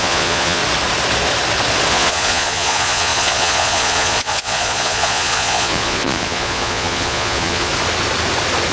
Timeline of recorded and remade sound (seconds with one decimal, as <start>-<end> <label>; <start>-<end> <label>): 0.0-0.6 remade; 0.6-1.9 recorded; 1.9-7.7 remade; 7.7-8.7 recorded